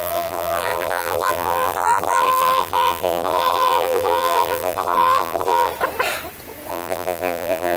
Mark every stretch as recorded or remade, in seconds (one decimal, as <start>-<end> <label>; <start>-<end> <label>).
0.0-5.7 remade; 5.7-6.7 recorded; 6.7-7.8 remade